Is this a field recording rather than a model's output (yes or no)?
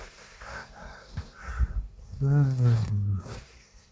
no